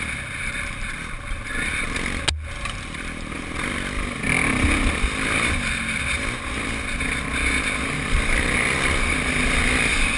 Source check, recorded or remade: recorded